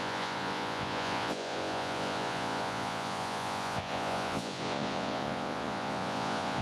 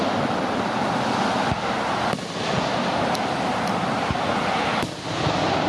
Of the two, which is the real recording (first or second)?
second